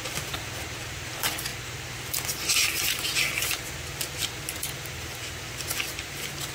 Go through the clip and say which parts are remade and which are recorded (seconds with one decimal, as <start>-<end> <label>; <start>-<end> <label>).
0.0-6.5 recorded